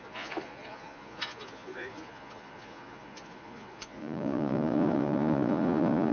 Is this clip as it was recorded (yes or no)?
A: no